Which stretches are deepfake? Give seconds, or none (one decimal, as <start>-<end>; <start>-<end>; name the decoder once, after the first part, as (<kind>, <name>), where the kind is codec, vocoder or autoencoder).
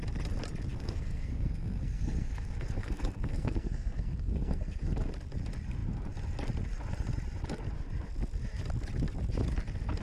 0.7-5.1 (codec, SNAC)